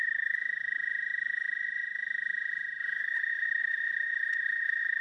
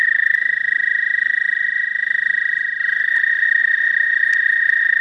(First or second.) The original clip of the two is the second